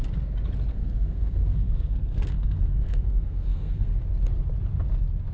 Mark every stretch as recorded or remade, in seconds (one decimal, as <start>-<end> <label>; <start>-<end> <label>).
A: 0.0-0.7 recorded; 0.7-3.9 remade; 3.9-5.3 recorded